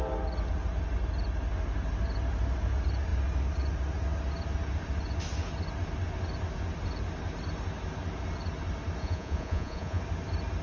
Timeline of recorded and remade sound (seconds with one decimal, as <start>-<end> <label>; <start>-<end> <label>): 0.0-9.0 recorded; 9.0-10.0 remade; 10.0-10.6 recorded